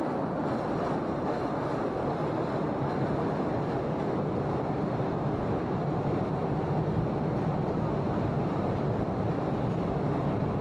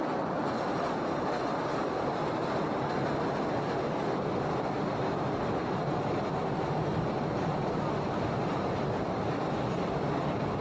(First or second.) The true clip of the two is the first